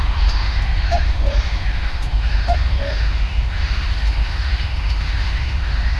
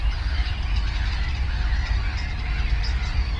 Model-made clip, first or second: first